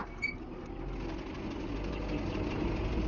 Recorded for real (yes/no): yes